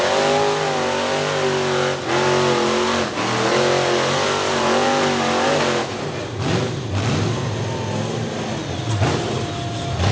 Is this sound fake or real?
real